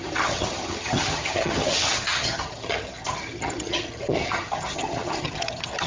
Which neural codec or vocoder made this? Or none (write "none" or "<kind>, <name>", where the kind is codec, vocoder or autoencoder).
vocoder, HiFi-GAN